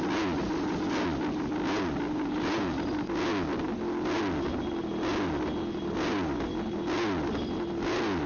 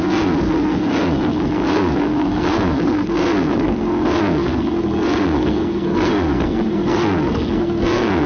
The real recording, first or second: first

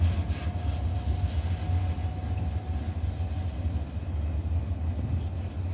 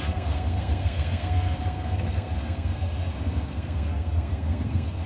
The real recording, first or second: first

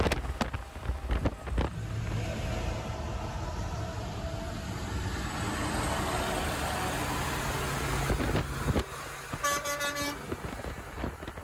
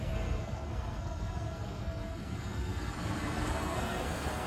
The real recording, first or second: first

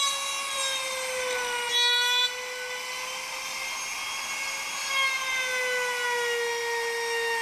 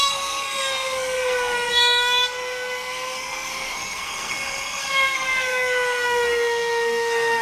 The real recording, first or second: first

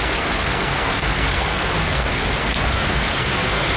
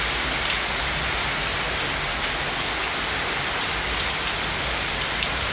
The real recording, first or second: second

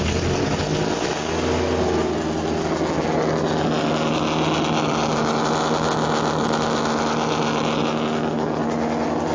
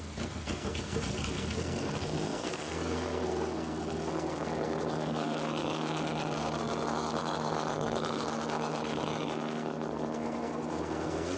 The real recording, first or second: first